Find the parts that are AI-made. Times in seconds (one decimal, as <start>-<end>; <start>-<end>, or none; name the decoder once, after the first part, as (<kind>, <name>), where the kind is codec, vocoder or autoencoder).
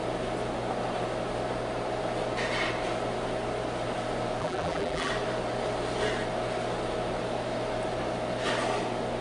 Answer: 4.4-5.1 (vocoder, BigVGAN v2)